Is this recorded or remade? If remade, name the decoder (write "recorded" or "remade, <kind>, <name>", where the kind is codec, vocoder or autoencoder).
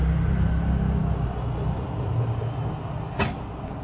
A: recorded